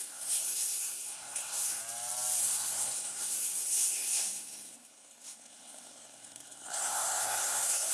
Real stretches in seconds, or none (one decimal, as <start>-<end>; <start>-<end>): 1.8-2.4